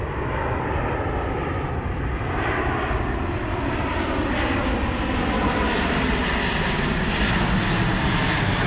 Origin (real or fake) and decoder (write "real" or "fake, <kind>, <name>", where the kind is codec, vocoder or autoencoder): real